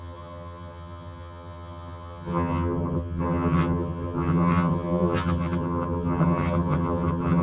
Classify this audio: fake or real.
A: fake